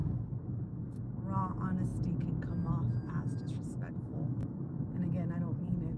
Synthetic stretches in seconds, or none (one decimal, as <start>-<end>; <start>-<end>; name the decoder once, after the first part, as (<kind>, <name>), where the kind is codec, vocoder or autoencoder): 0.0-1.0 (codec, DAC); 4.1-4.8